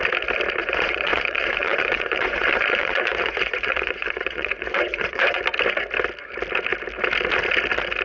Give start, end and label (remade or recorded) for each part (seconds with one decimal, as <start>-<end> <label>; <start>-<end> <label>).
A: 0.0-0.6 recorded; 0.6-5.4 remade; 5.4-8.0 recorded